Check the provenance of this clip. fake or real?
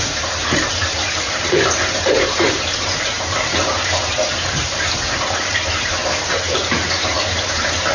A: fake